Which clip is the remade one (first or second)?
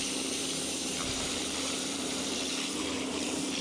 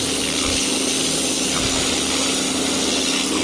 first